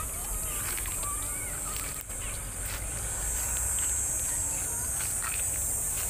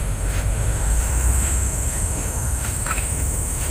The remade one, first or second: second